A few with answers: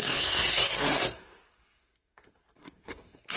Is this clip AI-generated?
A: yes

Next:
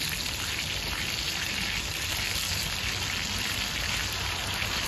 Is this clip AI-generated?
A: no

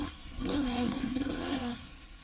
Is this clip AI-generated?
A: yes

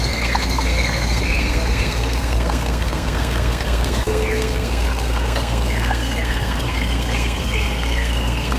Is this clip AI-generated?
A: yes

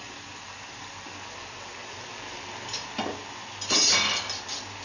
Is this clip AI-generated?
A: no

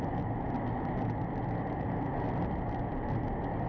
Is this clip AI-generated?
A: no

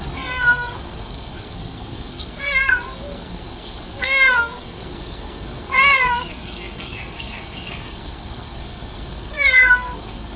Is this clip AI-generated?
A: yes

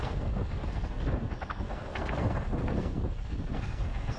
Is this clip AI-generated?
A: yes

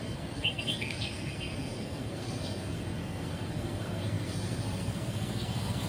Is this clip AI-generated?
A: yes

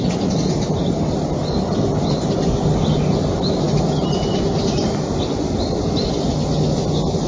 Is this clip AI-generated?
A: no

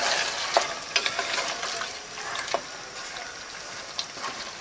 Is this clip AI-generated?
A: no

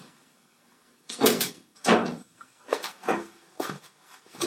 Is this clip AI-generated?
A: yes